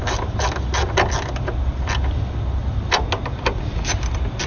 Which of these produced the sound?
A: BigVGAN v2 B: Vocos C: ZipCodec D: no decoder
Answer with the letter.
D